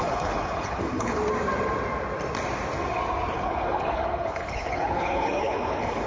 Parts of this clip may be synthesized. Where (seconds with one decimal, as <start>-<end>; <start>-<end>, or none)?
0.0-1.2; 3.3-6.1

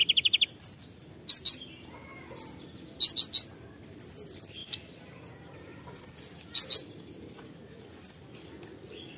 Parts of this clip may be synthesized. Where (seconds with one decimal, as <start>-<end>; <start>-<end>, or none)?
none

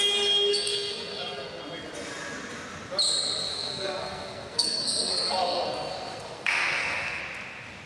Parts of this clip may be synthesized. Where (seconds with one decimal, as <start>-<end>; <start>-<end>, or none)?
0.5-1.6; 3.5-7.2

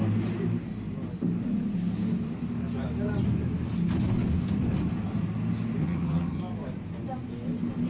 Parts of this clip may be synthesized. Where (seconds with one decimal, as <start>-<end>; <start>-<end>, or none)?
5.8-6.4

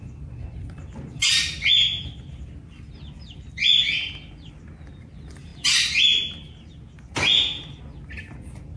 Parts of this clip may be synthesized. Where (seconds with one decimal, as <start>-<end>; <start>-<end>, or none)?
none

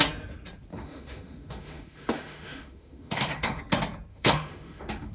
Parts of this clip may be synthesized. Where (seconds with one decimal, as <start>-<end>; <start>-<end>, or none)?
0.7-3.6; 4.1-5.1

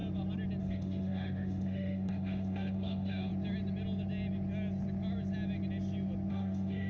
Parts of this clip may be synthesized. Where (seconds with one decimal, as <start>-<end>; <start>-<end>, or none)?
0.6-3.3; 6.3-6.9